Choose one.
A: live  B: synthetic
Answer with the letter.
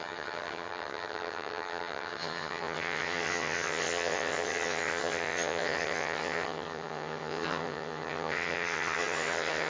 B